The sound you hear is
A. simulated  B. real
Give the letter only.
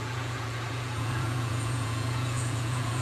A